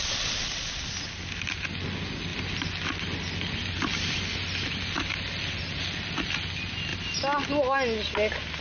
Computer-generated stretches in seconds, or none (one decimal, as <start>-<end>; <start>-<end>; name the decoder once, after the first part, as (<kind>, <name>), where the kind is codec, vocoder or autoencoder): none